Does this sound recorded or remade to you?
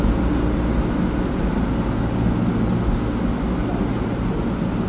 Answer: recorded